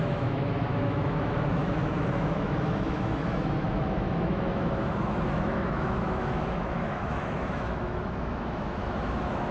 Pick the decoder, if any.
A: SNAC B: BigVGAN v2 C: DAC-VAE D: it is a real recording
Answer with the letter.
C